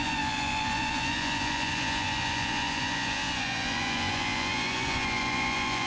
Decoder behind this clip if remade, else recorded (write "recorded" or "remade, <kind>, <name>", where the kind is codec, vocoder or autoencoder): remade, vocoder, Vocos